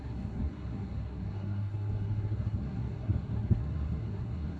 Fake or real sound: fake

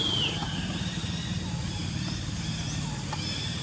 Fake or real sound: real